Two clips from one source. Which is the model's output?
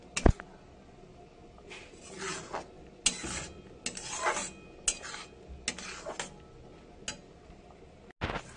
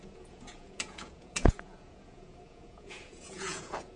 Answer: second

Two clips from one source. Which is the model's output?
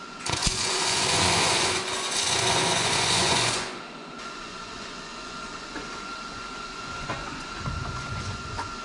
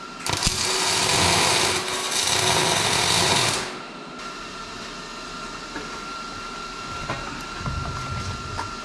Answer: first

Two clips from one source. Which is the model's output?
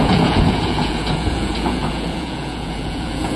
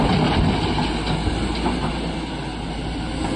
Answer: first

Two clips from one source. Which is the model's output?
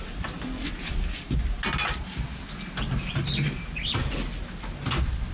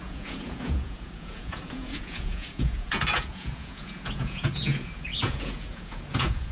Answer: second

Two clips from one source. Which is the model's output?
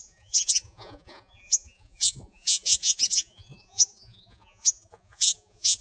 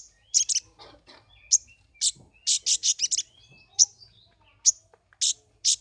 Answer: first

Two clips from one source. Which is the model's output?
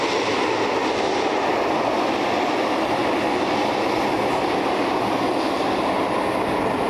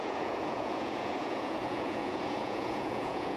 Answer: second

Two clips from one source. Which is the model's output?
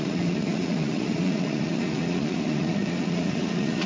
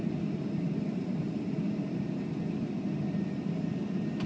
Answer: first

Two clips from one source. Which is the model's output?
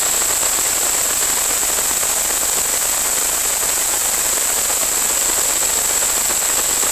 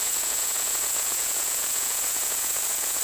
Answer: second